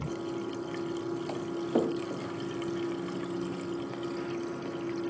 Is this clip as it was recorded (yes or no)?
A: yes